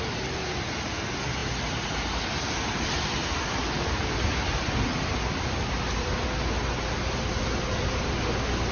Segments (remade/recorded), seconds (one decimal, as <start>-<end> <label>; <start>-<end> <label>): 0.0-8.7 recorded

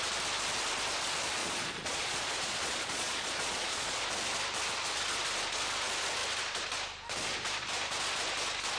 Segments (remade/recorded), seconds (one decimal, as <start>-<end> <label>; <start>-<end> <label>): 0.0-1.4 recorded; 1.4-4.0 remade; 4.0-8.8 recorded

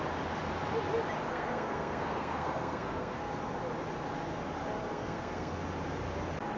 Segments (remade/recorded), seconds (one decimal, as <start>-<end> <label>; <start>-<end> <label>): 0.0-1.3 recorded; 1.3-3.3 remade; 3.3-4.9 recorded; 4.9-5.5 remade; 5.5-6.6 recorded

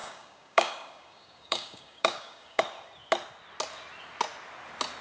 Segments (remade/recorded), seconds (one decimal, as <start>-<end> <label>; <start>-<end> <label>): 0.0-2.6 remade; 2.6-5.0 recorded

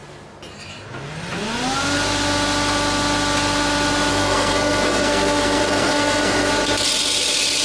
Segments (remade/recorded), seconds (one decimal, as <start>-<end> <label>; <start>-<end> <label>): 0.0-4.1 recorded; 4.1-6.5 remade; 6.5-7.6 recorded

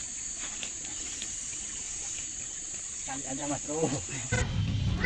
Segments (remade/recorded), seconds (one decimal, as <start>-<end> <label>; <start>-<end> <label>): 0.0-5.1 recorded

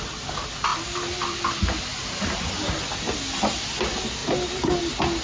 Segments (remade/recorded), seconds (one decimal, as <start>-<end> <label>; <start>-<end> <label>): 0.0-5.2 recorded